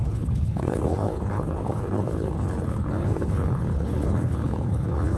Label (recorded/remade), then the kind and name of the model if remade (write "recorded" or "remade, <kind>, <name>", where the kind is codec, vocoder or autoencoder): remade, codec, HILCodec